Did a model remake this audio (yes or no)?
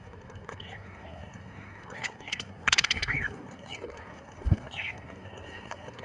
yes